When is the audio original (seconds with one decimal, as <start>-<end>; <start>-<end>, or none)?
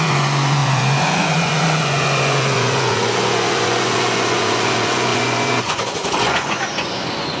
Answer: none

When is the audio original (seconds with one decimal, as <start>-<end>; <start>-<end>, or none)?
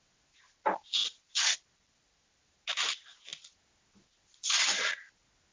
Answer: 0.0-5.5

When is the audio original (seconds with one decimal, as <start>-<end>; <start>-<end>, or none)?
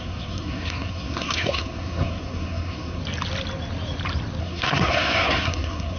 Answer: 3.0-4.4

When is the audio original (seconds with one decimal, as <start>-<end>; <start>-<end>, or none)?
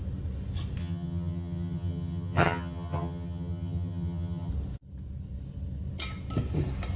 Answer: 0.0-0.8; 4.5-7.0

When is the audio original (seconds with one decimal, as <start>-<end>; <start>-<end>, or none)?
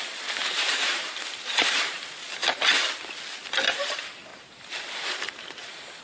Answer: 0.0-0.4; 2.0-4.3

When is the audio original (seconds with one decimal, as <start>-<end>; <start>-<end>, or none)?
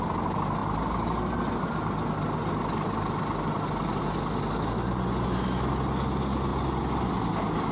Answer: 0.0-7.7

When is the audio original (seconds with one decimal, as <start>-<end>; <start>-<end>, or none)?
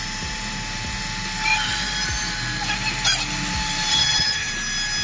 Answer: 0.0-3.9; 4.5-5.0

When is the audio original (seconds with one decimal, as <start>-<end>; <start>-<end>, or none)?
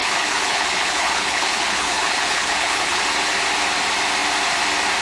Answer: 3.0-5.0